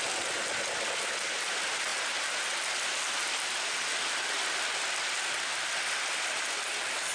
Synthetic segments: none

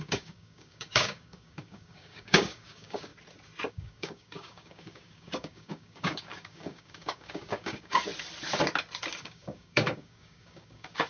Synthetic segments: 0.0-3.1 (codec, DAC); 3.7-8.1; 9.2-11.1

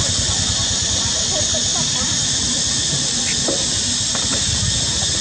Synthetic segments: none

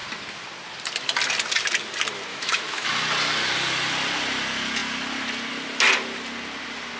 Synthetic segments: 2.3-2.9 (autoencoder, DAC-VAE)